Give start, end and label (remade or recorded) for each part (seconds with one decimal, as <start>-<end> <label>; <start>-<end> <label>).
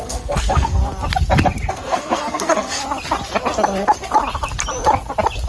0.0-0.8 remade; 0.8-1.7 recorded; 1.7-2.8 remade; 2.8-5.5 recorded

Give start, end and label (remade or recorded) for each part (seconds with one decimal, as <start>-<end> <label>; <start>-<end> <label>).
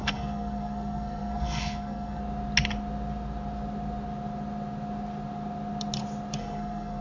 0.0-2.2 remade; 2.2-6.4 recorded; 6.4-7.0 remade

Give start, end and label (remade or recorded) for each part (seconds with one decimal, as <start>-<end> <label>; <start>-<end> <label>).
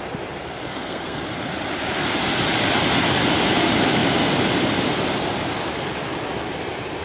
0.0-0.7 recorded; 0.7-1.2 remade; 1.2-7.0 recorded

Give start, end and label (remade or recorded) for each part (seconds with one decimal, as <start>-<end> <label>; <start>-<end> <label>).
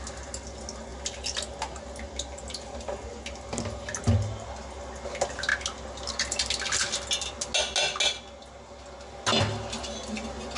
0.0-10.6 recorded